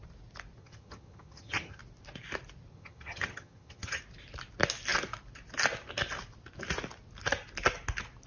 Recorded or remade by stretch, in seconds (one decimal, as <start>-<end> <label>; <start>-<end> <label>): 0.0-0.6 recorded; 0.6-1.8 remade; 1.8-2.7 recorded; 2.7-4.0 remade; 4.0-8.3 recorded